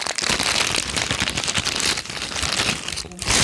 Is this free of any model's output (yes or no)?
yes